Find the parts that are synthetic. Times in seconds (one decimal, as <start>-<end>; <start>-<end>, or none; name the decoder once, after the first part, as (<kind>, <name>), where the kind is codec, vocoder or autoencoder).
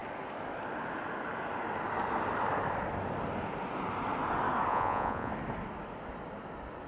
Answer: 4.7-5.3 (vocoder, Vocos)